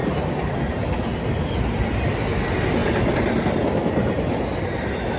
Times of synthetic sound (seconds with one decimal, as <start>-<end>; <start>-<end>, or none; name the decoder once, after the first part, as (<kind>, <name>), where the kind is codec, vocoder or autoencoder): 0.0-2.0 (vocoder, BigVGAN v2); 2.8-3.6